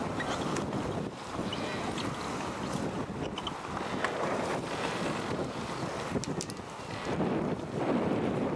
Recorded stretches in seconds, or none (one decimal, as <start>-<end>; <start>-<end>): 0.0-8.6